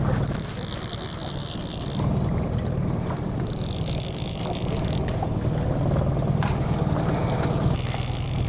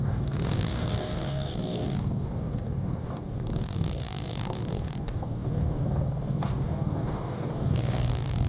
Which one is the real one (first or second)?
first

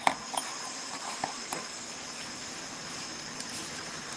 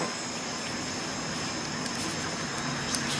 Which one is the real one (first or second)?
second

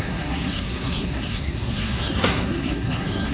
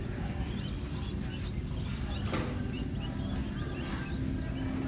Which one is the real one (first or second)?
second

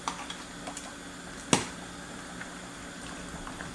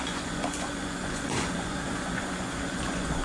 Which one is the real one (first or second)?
first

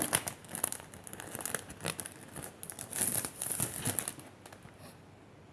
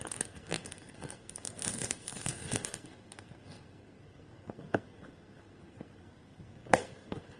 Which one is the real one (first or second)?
first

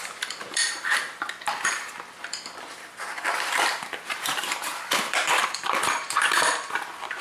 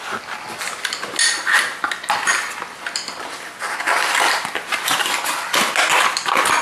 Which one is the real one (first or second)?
second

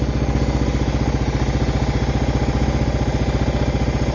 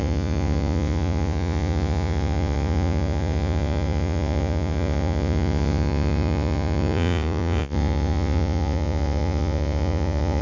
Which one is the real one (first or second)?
first